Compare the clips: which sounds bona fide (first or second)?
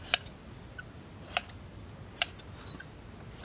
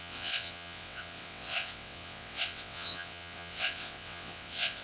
first